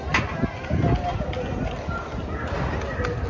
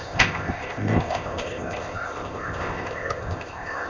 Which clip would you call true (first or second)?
first